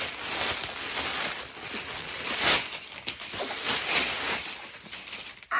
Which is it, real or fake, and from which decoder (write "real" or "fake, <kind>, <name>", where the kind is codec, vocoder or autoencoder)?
real